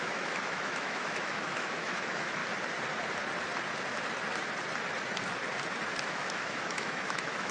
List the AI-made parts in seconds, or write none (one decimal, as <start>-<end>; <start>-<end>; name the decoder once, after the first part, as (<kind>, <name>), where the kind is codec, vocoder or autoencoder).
0.0-2.4 (autoencoder, DAC-VAE); 6.0-7.5